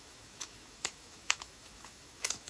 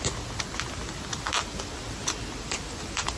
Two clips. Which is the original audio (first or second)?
second